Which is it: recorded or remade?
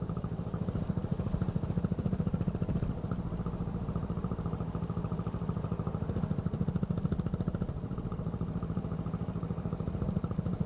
recorded